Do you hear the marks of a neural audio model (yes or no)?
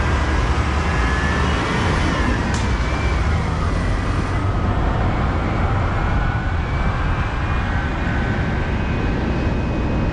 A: no